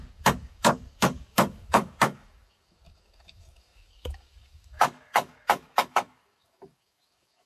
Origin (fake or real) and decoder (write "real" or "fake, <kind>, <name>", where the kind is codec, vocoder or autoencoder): fake, codec, DAC